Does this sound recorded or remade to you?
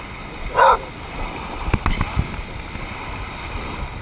recorded